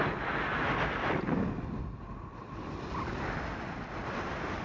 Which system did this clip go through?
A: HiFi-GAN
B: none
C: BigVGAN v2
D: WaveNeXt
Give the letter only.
B